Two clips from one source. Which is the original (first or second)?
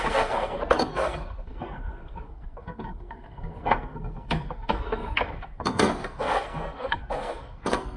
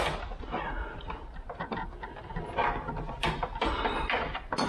second